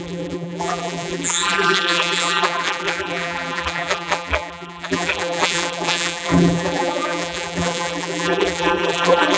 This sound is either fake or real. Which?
fake